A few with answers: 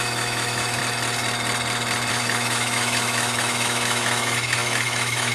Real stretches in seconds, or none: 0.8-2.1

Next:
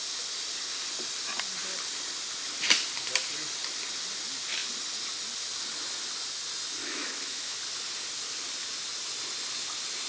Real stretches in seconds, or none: 0.0-6.8; 7.6-10.1

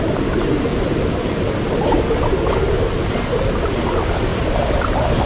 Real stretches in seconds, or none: 0.0-5.3

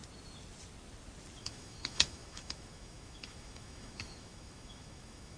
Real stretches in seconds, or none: 0.0-1.4

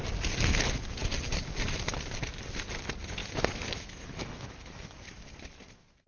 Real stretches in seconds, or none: 0.0-3.2; 5.0-6.1

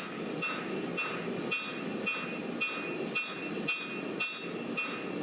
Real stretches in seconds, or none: 0.0-5.2

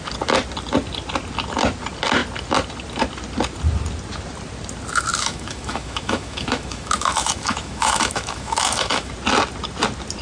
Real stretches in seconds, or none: 0.0-5.1; 9.1-10.2